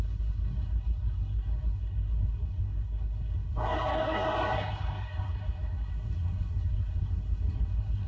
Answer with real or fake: fake